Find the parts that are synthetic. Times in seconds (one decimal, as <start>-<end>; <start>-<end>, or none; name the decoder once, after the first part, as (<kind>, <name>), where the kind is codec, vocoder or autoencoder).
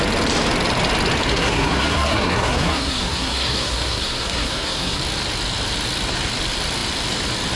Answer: 1.3-5.0 (codec, SNAC)